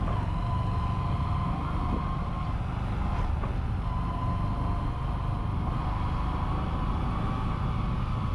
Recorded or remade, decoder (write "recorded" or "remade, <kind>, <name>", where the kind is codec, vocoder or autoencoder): recorded